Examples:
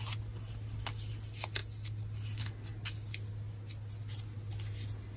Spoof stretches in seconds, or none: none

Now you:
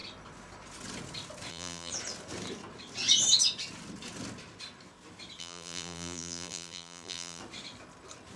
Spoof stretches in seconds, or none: 1.5-1.9; 5.4-7.4

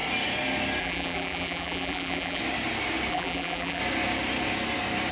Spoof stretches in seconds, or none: 0.8-2.4; 3.1-3.8

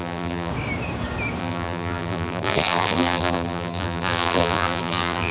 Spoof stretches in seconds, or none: 0.0-0.5; 1.4-5.3

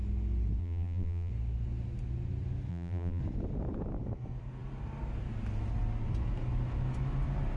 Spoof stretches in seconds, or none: 0.6-1.3; 2.7-3.2

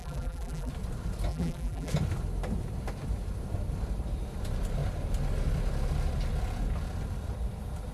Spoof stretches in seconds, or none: 0.0-0.7; 1.3-1.9

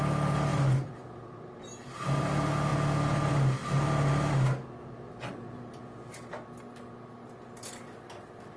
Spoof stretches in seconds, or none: 0.5-1.6; 5.3-5.8